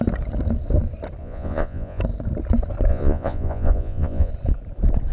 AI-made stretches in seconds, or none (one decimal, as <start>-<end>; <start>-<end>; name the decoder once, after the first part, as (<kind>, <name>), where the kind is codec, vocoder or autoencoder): 1.2-2.0 (vocoder, Vocos); 2.9-4.3